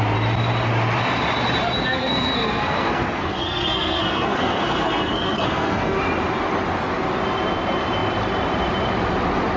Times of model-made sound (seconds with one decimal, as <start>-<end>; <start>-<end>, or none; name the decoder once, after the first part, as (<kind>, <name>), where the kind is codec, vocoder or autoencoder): 1.9-6.0 (codec, SNAC)